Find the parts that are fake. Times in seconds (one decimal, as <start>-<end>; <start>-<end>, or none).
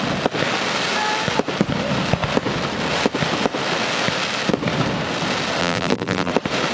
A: 5.6-6.3